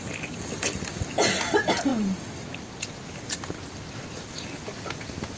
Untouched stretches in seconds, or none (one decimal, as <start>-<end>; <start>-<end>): 0.0-5.4

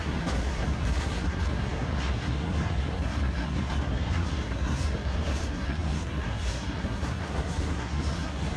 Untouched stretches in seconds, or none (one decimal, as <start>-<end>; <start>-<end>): none

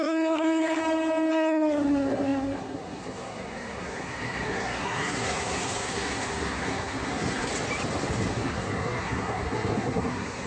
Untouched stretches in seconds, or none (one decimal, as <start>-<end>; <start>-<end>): 0.8-1.3; 7.5-8.3

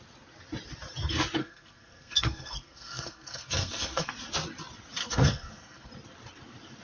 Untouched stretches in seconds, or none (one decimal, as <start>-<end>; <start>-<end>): 0.0-1.4; 4.1-5.0; 5.9-6.8

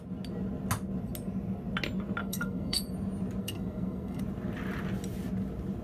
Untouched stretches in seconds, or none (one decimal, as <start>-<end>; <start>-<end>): 0.0-2.2; 2.8-3.4; 4.2-5.8

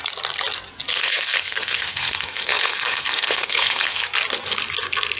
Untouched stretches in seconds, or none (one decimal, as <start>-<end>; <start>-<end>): 0.0-0.9; 4.0-5.2

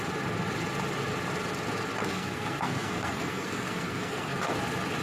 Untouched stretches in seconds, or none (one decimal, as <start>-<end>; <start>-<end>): 0.0-2.0; 4.6-5.0

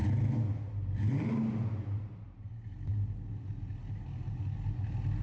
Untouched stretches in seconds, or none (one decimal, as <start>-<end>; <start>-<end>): 0.0-5.2